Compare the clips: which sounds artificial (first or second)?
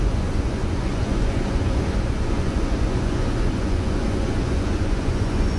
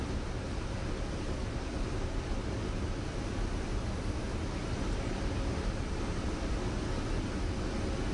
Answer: first